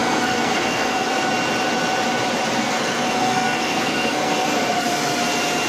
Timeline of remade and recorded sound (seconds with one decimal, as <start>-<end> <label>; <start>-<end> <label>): 0.0-1.3 remade; 1.3-2.6 recorded; 2.6-5.2 remade; 5.2-5.7 recorded

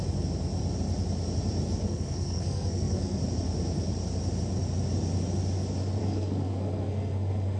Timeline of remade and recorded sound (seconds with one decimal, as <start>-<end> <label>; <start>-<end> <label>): 0.0-1.8 recorded; 1.8-3.2 remade; 3.2-6.0 recorded; 6.0-7.6 remade

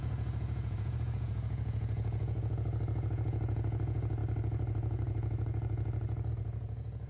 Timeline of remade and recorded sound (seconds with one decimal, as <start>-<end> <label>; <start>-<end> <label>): 0.0-7.1 remade